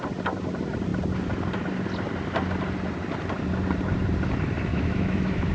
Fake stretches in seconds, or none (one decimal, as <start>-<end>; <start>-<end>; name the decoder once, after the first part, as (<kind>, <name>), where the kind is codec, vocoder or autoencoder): 4.7-5.5 (autoencoder, DAC-VAE)